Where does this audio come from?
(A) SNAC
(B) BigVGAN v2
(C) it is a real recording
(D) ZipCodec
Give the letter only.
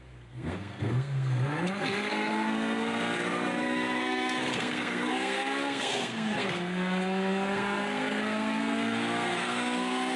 A